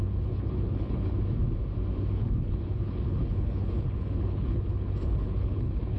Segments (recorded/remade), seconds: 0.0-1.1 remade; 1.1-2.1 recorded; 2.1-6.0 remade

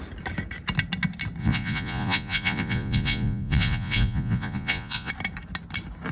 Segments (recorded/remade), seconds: 0.0-1.4 recorded; 1.4-5.1 remade; 5.1-6.1 recorded

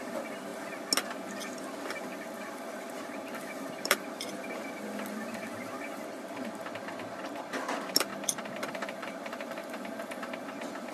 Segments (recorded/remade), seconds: 0.0-0.5 remade; 0.5-1.9 recorded; 1.9-6.6 remade; 6.6-7.6 recorded; 7.6-8.1 remade; 8.1-8.7 recorded; 8.7-9.6 remade; 9.6-10.9 recorded

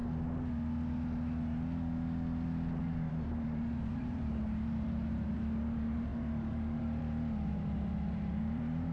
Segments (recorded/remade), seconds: 0.0-3.1 recorded; 3.1-8.9 remade

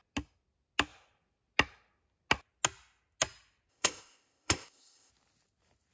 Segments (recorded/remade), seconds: 0.0-3.7 recorded; 3.7-5.1 remade; 5.1-5.9 recorded

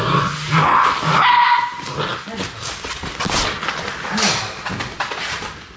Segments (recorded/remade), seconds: 0.0-5.8 recorded

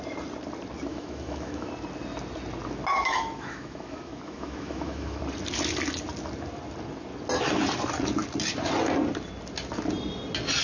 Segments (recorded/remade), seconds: 0.0-0.9 recorded; 0.9-1.7 remade; 1.7-2.9 recorded; 2.9-5.2 remade; 5.2-10.6 recorded

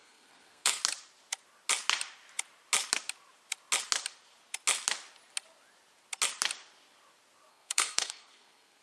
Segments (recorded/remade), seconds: 0.0-0.8 remade; 0.8-7.5 recorded; 7.5-8.8 remade